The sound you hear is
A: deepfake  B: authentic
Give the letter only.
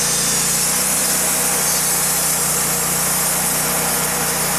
B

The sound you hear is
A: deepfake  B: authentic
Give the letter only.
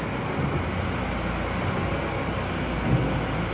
B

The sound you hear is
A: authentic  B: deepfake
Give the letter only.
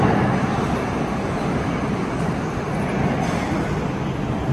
A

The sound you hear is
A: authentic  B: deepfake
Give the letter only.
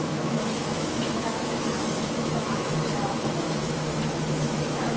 B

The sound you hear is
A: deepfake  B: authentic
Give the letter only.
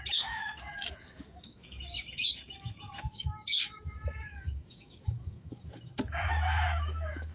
A